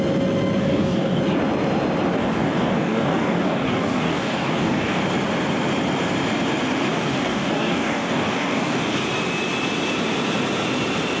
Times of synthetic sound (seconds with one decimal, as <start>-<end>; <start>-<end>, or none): 0.6-1.2; 2.2-5.0; 6.9-9.0